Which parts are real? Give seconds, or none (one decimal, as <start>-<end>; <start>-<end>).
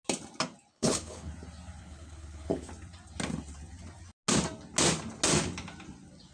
0.0-0.7; 1.3-1.8; 2.7-6.3